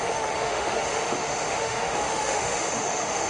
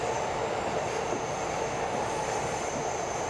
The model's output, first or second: first